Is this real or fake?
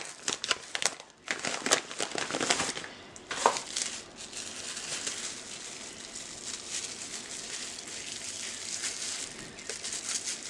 real